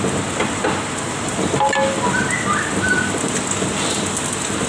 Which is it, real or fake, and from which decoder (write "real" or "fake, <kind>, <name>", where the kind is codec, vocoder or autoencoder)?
real